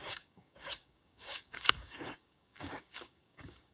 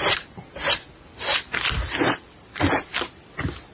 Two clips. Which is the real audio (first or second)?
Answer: second